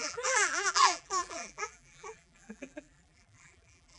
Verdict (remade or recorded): remade